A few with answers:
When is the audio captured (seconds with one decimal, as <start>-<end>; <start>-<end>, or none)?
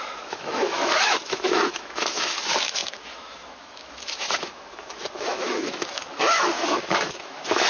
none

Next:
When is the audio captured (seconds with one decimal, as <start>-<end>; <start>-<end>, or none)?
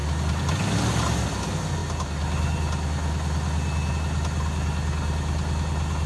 0.0-6.1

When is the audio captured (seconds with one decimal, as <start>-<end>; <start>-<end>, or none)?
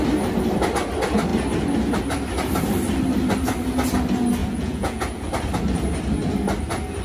0.0-4.4; 5.3-7.0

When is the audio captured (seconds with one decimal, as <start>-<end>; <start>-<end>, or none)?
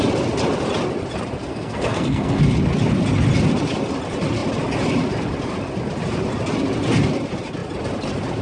0.0-1.5; 2.4-8.4